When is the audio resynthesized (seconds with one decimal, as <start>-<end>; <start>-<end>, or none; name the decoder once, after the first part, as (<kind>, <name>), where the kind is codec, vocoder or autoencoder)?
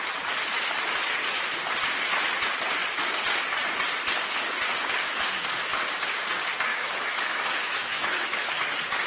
6.7-8.5 (autoencoder, DAC-VAE)